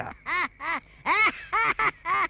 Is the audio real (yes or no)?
yes